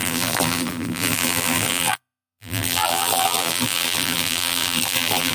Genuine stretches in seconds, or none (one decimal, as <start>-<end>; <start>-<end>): none